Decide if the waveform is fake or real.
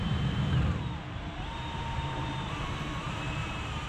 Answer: fake